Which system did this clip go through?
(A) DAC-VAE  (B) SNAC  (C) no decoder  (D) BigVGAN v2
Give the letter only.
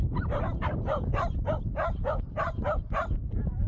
D